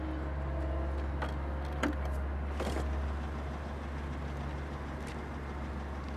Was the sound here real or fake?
real